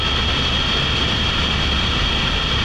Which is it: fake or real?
real